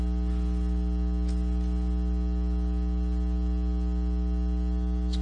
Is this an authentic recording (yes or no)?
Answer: yes